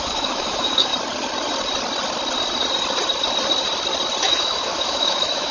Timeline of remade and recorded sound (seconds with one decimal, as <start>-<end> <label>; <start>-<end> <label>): 0.0-0.9 remade; 0.9-4.2 recorded; 4.2-5.5 remade